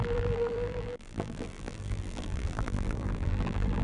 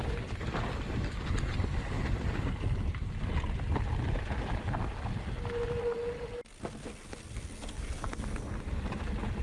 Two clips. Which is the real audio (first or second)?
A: second